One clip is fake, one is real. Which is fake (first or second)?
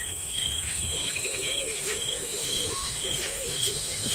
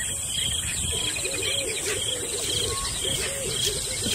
first